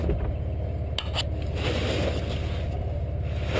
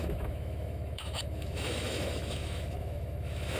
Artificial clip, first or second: second